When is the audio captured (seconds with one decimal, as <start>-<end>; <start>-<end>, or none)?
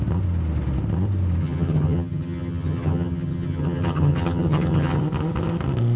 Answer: 0.0-1.4; 5.0-6.0